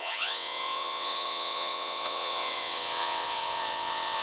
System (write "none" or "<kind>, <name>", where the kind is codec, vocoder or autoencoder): vocoder, WaveNeXt